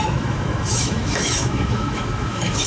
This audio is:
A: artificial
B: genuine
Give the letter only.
A